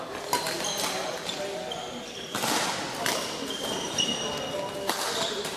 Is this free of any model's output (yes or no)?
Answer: yes